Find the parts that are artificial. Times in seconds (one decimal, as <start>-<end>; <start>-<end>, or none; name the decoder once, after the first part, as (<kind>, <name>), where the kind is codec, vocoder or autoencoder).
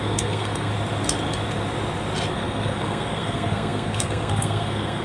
0.0-0.7 (codec, SNAC); 2.3-5.0